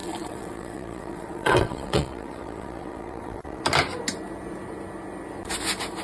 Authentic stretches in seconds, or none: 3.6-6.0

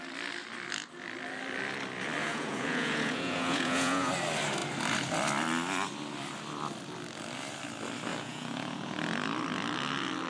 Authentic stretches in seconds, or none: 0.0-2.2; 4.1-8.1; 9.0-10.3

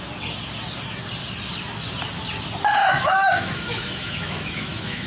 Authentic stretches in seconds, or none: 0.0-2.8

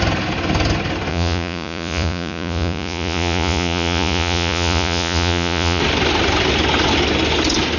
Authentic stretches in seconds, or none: 0.0-1.1; 5.8-7.8

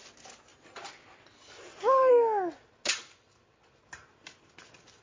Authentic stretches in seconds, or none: 0.0-5.0